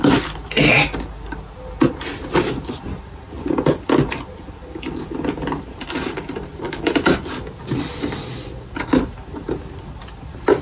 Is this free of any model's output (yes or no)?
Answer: yes